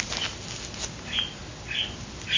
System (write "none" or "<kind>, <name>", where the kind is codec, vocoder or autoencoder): none